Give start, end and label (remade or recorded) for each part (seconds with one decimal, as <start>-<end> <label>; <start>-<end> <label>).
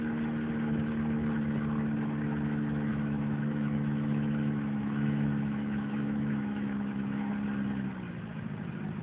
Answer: 0.0-2.9 recorded; 2.9-7.3 remade; 7.3-9.0 recorded